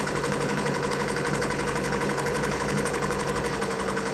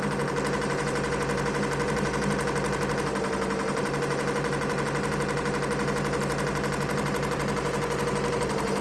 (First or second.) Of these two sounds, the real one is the second